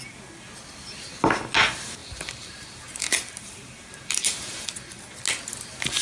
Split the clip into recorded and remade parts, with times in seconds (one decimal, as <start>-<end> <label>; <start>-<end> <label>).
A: 0.0-2.0 recorded; 2.0-5.0 remade; 5.0-6.0 recorded